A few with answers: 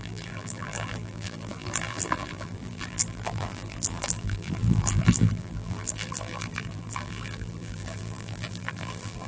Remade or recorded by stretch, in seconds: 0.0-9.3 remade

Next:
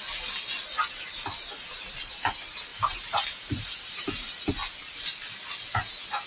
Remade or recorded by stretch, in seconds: 0.0-2.7 recorded; 2.7-4.5 remade; 4.5-6.3 recorded